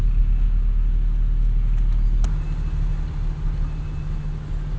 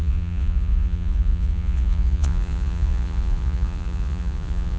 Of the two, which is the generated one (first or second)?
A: second